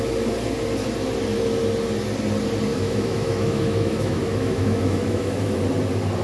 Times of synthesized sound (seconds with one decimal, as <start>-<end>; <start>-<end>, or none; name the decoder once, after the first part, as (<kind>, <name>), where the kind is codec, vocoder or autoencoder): 2.7-5.6 (autoencoder, DAC-VAE)

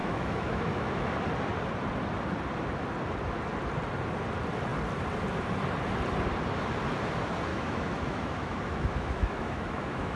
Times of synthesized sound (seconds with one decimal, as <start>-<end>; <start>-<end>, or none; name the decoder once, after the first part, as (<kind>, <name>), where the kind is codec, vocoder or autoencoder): 0.0-1.1 (autoencoder, DAC-VAE); 7.5-10.2